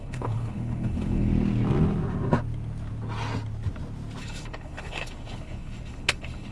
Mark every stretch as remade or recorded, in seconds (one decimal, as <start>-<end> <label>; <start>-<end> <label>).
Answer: 0.0-1.3 remade; 1.3-4.2 recorded; 4.2-6.5 remade